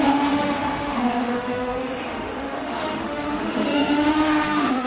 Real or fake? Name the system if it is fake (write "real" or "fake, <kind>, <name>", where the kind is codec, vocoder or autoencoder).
fake, autoencoder, DAC-VAE